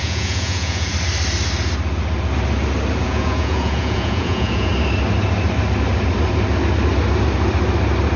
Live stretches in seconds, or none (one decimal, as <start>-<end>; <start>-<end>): 0.9-3.0; 4.7-8.2